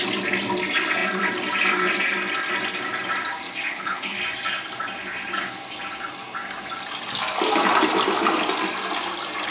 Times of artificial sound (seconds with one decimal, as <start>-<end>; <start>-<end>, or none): 3.7-4.2